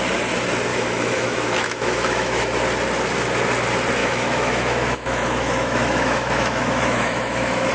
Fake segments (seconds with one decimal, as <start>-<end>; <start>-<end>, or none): 0.7-2.4; 4.0-7.7